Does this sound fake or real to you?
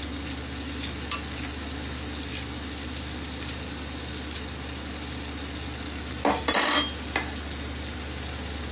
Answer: real